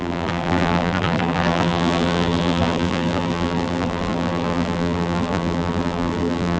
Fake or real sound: fake